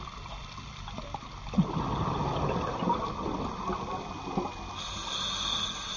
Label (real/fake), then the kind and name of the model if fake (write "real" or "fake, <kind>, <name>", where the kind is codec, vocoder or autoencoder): real